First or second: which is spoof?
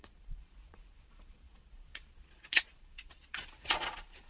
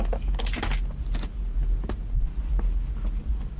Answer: first